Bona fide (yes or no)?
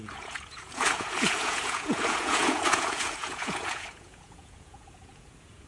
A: no